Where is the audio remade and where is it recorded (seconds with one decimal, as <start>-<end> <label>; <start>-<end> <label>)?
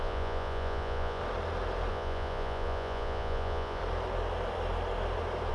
0.0-1.2 remade; 1.2-1.9 recorded; 1.9-3.8 remade; 3.8-5.5 recorded